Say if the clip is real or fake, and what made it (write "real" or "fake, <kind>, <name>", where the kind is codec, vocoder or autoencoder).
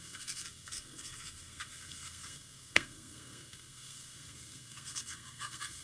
fake, codec, SNAC